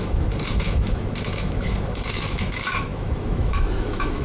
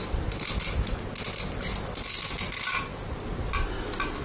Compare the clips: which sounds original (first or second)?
second